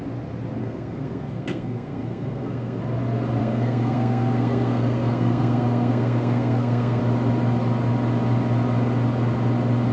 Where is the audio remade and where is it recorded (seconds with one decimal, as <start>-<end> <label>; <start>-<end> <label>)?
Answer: 0.0-0.6 recorded; 0.6-2.8 remade; 2.8-3.4 recorded; 3.4-7.0 remade; 7.0-9.9 recorded